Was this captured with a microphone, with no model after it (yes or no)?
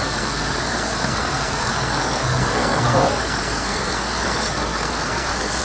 no